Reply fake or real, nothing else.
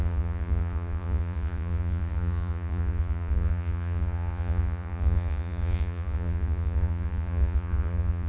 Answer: fake